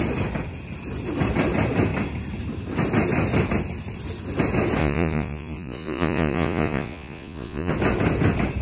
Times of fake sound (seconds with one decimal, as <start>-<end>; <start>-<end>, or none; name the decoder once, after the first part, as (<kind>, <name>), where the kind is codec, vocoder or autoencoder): 4.8-7.7 (vocoder, Vocos)